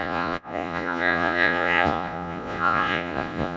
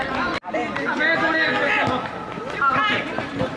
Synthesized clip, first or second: first